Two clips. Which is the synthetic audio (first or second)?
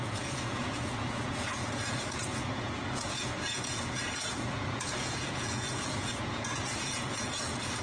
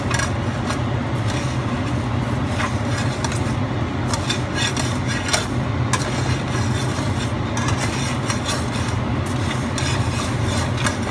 first